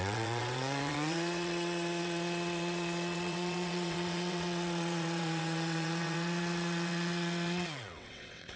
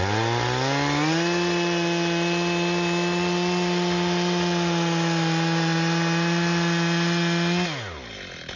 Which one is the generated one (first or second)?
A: first